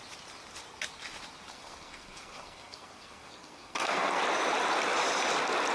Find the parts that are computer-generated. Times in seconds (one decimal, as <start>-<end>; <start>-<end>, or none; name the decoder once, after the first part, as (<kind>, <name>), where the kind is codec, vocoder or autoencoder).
1.5-4.2 (codec, SNAC)